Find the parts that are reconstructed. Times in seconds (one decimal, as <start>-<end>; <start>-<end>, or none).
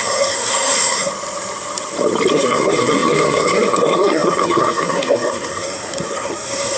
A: 0.0-1.1; 2.3-6.8